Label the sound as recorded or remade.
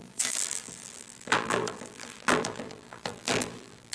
remade